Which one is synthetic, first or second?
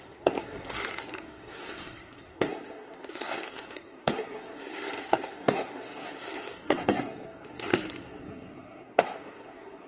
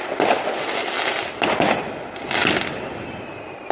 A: first